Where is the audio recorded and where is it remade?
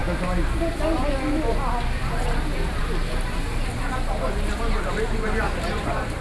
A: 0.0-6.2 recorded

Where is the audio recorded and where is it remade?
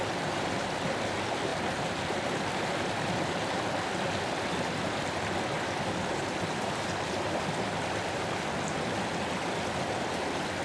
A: 0.0-10.6 recorded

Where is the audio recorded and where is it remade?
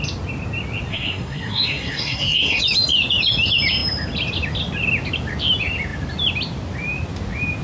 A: 0.0-0.9 recorded; 0.9-2.6 remade; 2.6-7.6 recorded